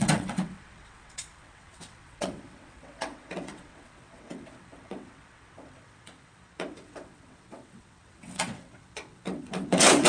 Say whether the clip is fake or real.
fake